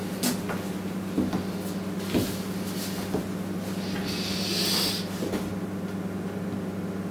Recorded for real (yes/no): yes